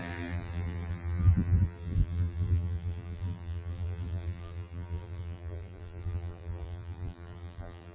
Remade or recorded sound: remade